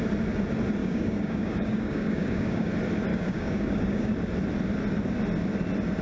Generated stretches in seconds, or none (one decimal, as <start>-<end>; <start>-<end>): 0.8-2.7; 3.1-4.1